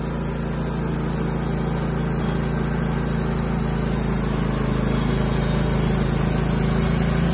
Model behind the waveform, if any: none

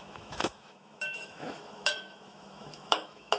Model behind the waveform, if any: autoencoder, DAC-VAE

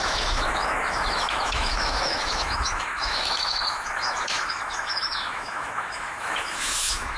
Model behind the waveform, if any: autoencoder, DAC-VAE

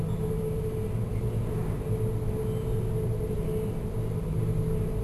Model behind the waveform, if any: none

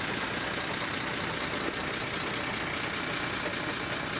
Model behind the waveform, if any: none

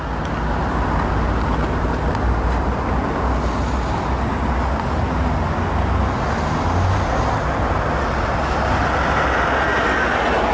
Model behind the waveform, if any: none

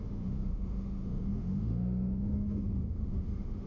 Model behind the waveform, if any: autoencoder, DAC-VAE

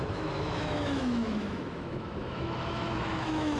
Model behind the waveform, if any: autoencoder, DAC-VAE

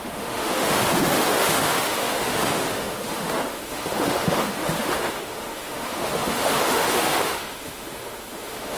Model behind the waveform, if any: autoencoder, DAC-VAE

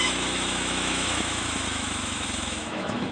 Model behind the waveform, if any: autoencoder, DAC-VAE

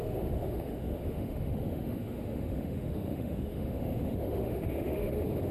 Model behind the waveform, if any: autoencoder, DAC-VAE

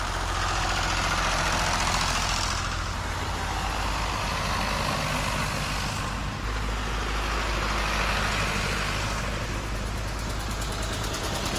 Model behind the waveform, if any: none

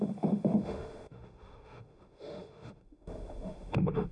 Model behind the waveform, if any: autoencoder, DAC-VAE